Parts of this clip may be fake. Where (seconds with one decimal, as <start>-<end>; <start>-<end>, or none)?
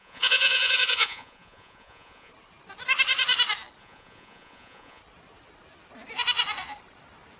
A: 0.0-2.3; 3.8-5.0